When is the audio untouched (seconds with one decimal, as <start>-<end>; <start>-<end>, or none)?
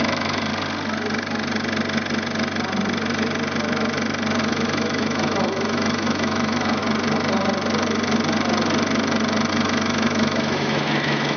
0.5-4.4; 6.8-9.5